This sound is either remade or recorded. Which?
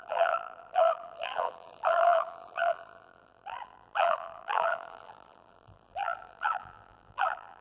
remade